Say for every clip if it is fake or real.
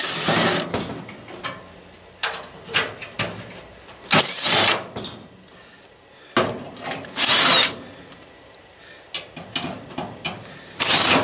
real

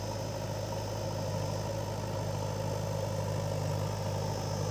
real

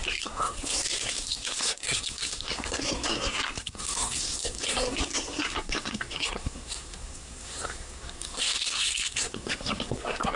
fake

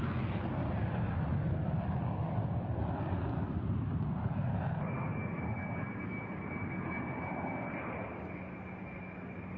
real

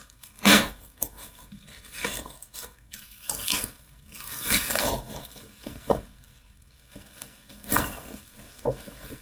fake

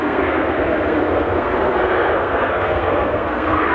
fake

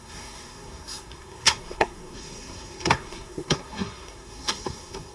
fake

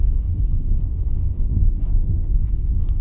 fake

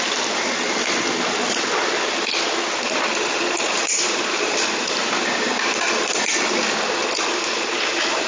real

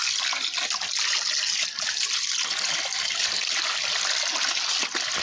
real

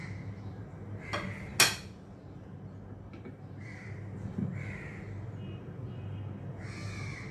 real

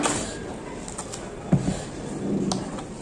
real